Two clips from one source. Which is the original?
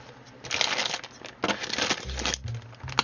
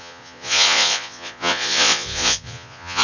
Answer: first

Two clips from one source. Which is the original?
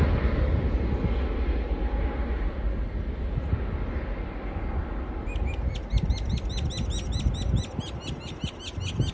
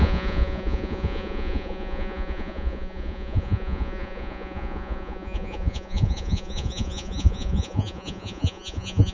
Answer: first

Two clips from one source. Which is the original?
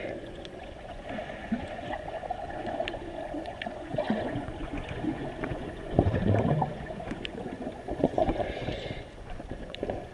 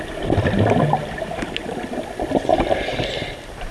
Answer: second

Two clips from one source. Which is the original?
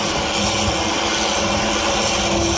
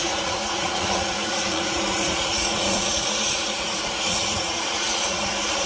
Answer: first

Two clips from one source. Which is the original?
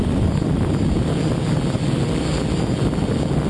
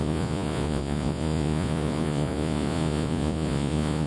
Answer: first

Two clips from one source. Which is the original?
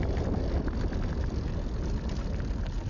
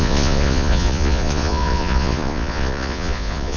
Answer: first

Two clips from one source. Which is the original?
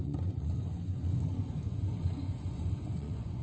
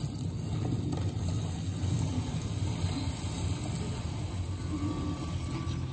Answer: second